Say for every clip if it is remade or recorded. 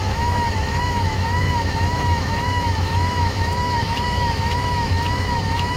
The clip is remade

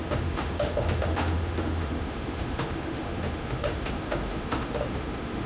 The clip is remade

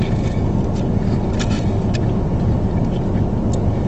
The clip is recorded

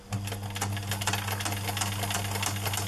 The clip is recorded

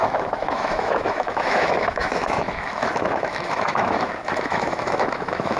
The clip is remade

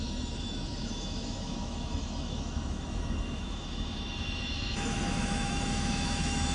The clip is remade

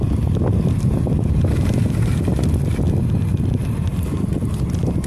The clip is recorded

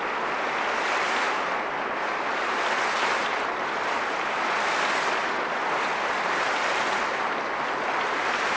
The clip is recorded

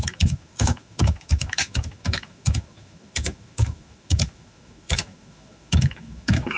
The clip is remade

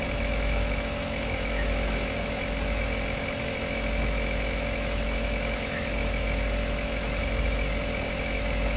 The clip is remade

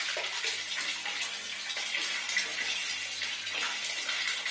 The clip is recorded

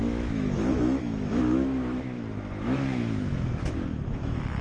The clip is remade